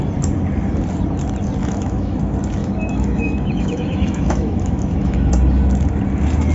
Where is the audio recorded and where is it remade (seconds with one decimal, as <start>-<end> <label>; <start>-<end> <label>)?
0.0-1.6 recorded; 1.6-2.2 remade; 2.2-2.6 recorded; 2.6-5.3 remade; 5.3-6.5 recorded